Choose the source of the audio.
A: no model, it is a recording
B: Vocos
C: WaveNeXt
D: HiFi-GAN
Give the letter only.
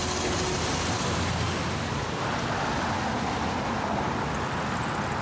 A